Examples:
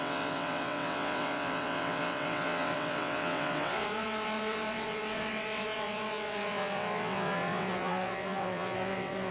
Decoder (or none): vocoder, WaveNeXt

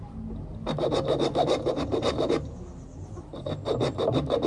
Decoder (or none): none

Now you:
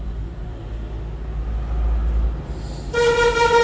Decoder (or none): none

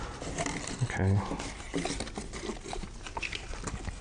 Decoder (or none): none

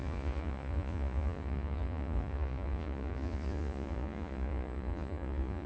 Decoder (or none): vocoder, Vocos